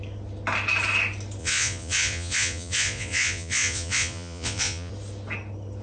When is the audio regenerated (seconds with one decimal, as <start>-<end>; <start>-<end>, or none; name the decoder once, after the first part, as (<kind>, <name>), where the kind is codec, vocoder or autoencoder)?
1.4-4.9 (vocoder, Vocos)